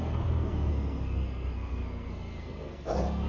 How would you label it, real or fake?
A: fake